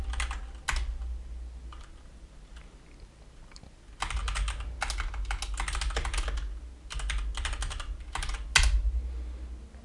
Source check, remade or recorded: recorded